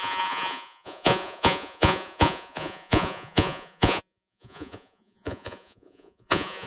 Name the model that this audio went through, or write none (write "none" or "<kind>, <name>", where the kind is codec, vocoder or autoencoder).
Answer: vocoder, Vocos